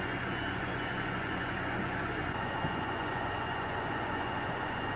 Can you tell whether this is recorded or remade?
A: remade